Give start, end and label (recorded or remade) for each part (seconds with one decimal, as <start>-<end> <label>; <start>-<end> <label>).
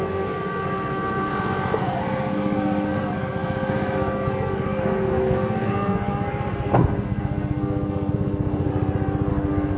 0.0-1.3 remade; 1.3-1.8 recorded; 1.8-8.7 remade; 8.7-9.3 recorded; 9.3-9.8 remade